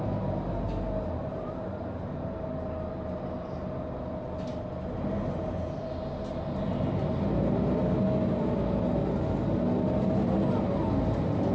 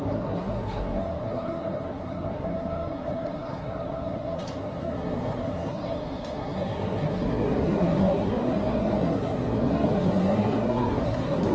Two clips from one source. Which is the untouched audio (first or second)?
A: first